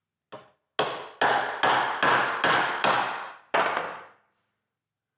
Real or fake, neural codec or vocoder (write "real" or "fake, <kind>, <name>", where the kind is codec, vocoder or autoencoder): real